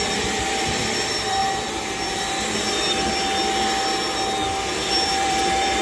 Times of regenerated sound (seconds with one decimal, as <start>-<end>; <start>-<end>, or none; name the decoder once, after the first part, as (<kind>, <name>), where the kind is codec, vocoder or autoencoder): 0.0-1.4 (vocoder, BigVGAN v2); 4.9-5.8